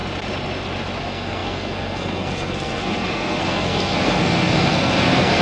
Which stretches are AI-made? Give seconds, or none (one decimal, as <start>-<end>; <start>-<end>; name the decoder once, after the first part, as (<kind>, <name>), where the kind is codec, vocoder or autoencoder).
1.0-5.4 (codec, SNAC)